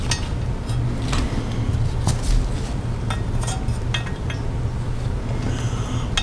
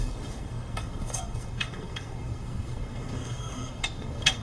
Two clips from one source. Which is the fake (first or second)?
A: second